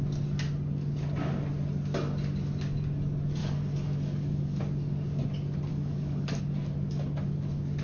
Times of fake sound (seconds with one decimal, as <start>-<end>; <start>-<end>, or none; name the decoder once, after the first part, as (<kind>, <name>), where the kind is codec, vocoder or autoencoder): 3.4-4.6 (codec, DAC); 5.7-6.4